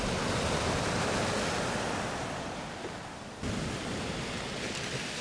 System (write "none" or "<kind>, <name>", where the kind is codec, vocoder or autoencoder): none